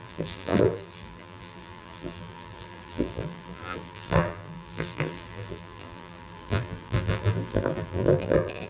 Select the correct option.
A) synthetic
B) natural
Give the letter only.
A